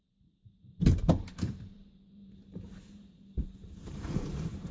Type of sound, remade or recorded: remade